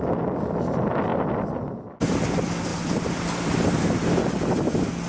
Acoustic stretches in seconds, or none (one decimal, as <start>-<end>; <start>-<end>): 0.0-5.1

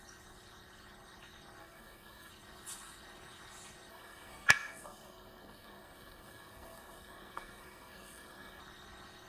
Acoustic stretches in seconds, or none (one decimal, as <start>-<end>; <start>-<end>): 0.0-1.6; 2.3-3.9; 8.6-9.3

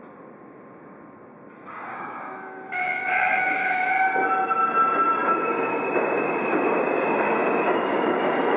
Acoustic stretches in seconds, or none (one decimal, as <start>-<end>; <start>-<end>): 0.0-1.9; 3.9-8.6

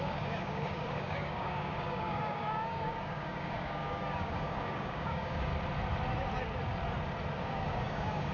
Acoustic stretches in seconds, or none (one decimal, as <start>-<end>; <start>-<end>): 5.5-7.4

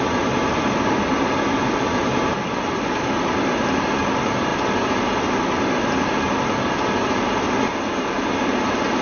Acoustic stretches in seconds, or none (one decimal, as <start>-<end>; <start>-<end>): 0.0-9.0

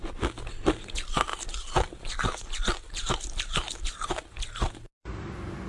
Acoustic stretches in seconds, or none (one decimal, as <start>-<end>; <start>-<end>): 0.0-5.7

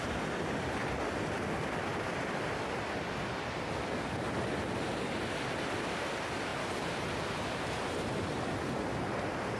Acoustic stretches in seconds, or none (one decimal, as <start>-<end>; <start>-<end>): 0.0-6.5; 7.9-9.6